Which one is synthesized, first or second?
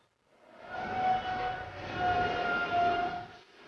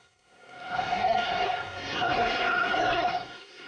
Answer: second